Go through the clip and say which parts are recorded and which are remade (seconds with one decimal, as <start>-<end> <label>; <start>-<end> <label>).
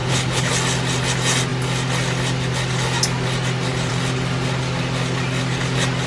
0.0-0.5 remade; 0.5-6.1 recorded